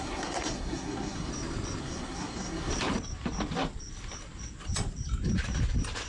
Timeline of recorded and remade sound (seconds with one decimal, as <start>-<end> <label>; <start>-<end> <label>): 0.0-1.3 remade; 1.3-1.8 recorded; 1.8-2.7 remade; 2.7-6.1 recorded